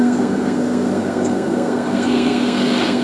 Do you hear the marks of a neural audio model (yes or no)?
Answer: yes